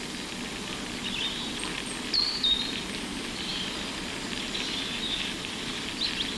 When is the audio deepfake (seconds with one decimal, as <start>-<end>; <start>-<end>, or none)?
none